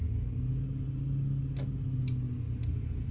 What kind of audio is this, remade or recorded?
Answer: recorded